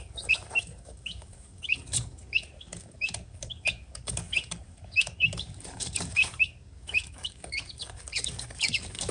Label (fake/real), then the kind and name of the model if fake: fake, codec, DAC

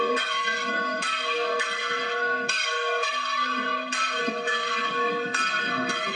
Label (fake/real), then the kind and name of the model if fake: fake, codec, SNAC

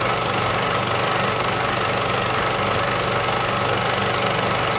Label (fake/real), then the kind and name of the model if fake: real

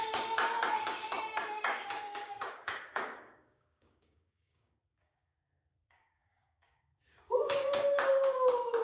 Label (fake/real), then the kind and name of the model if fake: fake, codec, DAC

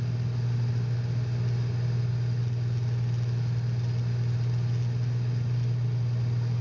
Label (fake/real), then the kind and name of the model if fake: real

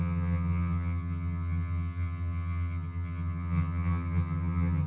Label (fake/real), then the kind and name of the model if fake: fake, vocoder, HiFi-GAN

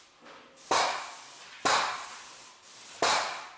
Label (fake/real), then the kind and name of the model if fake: real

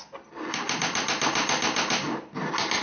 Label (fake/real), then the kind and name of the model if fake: real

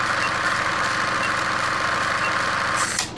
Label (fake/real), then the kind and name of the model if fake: real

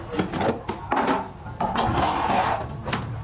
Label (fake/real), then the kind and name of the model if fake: real